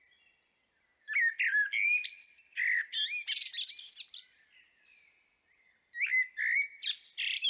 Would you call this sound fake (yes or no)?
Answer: no